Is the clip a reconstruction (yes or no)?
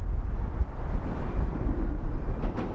no